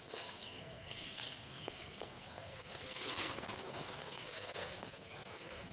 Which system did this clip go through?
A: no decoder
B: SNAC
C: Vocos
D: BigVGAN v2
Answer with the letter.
B